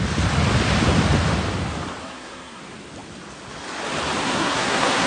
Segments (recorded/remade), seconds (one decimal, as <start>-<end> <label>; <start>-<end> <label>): 0.0-2.0 recorded; 2.0-2.6 remade; 2.6-4.2 recorded; 4.2-5.1 remade